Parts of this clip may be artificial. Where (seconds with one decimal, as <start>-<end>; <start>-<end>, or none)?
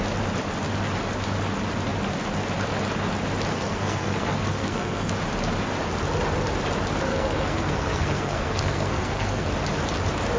3.5-5.1; 7.1-9.5